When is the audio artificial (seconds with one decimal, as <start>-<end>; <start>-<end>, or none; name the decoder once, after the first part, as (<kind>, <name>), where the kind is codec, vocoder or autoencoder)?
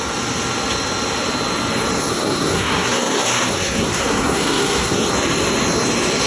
2.1-5.0 (codec, SNAC)